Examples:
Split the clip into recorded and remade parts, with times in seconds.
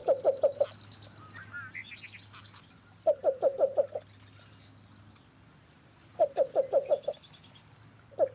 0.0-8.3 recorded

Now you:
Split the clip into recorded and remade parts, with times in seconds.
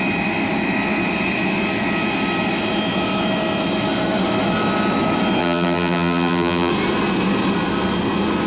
0.0-5.4 recorded; 5.4-6.7 remade; 6.7-8.5 recorded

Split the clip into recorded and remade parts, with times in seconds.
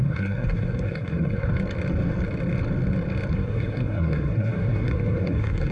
0.0-1.5 remade; 1.5-3.3 recorded; 3.3-5.7 remade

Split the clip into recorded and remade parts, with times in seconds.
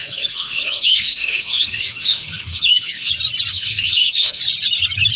0.0-3.1 remade; 3.1-3.5 recorded; 3.5-4.4 remade; 4.4-5.2 recorded